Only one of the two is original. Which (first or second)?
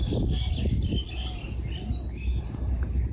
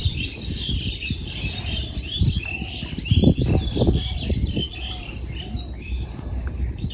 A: first